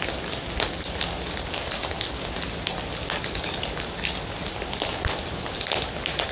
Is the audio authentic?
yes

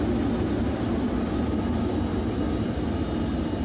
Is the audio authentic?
yes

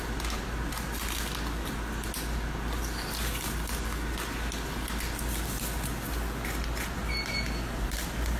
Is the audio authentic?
yes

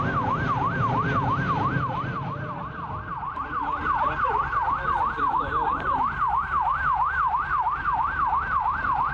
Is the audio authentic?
yes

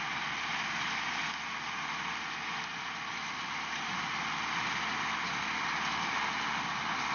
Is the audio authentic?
yes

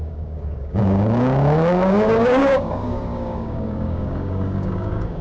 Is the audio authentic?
no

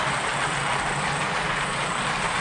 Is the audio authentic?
yes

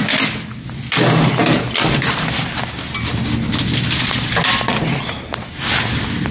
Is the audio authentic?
yes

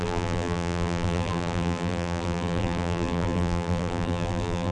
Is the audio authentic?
no